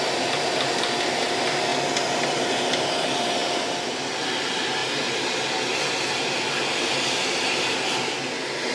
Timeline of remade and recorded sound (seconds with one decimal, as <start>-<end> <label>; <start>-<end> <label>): 0.0-8.7 recorded